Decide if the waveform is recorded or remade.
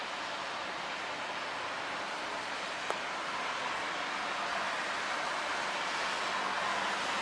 recorded